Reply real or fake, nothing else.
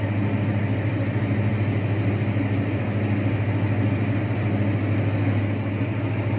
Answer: real